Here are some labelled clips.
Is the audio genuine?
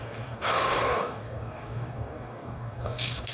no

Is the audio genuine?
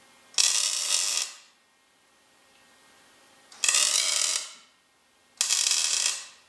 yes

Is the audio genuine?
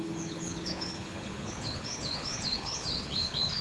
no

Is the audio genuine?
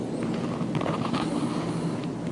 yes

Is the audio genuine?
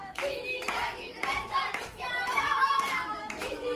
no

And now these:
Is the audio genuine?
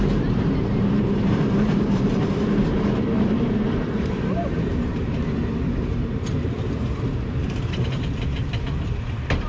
no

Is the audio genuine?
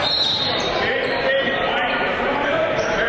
no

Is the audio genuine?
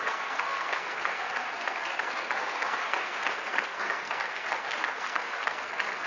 no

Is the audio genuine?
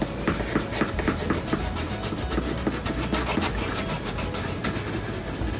yes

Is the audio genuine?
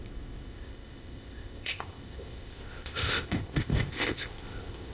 no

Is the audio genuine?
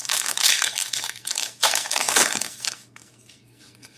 no